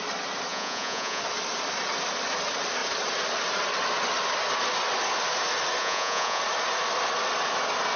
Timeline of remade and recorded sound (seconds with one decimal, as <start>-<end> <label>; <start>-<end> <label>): 0.0-0.5 recorded; 0.5-1.2 remade; 1.2-5.8 recorded; 5.8-6.4 remade; 6.4-8.0 recorded